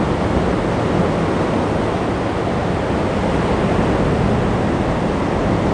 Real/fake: real